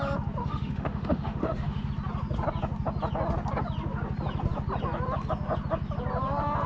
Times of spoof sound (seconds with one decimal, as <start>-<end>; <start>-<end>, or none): 0.4-1.9